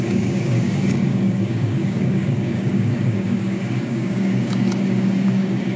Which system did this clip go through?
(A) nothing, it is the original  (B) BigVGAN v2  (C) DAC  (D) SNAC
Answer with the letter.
C